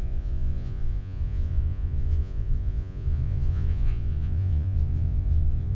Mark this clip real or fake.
fake